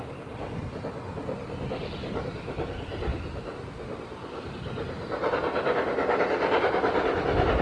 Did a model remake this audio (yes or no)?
no